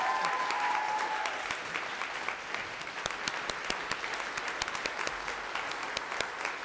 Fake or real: real